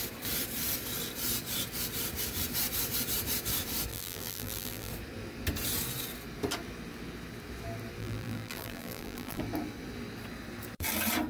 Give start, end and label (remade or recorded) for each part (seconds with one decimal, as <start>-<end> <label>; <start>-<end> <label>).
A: 0.0-3.9 recorded; 3.9-4.9 remade; 4.9-8.0 recorded; 8.0-9.4 remade; 9.4-11.3 recorded